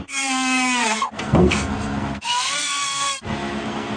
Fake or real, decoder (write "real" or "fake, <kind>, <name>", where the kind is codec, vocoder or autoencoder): fake, codec, SNAC